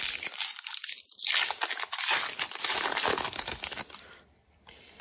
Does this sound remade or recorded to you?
recorded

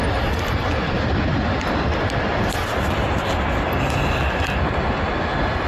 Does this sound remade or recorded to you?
recorded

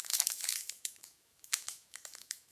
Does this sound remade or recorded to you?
remade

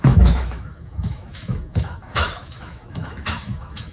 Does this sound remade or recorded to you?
remade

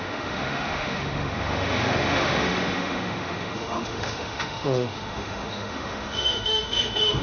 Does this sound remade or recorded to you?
remade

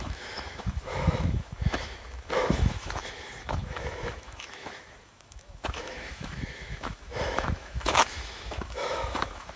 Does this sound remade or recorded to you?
remade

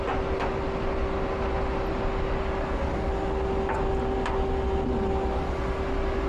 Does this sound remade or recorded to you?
recorded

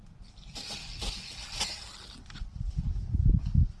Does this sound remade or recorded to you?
recorded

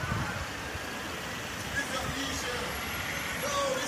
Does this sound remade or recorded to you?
recorded